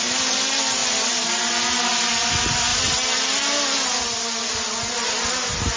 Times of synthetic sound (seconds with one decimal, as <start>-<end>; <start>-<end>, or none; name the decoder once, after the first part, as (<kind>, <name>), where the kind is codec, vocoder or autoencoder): none